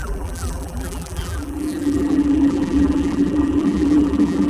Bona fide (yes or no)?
no